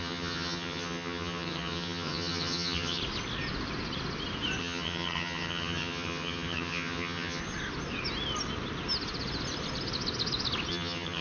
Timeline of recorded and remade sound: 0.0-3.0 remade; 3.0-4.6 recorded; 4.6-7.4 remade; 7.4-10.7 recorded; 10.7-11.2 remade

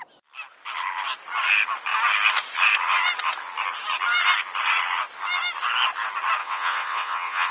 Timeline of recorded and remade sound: 0.0-6.4 recorded; 6.4-7.5 remade

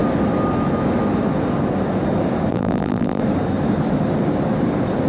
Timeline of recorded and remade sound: 0.0-2.5 recorded; 2.5-3.2 remade; 3.2-5.1 recorded